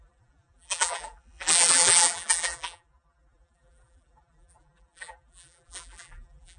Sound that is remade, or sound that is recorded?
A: remade